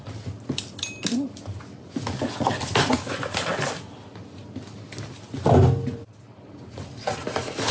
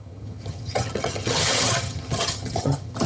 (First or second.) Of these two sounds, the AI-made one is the second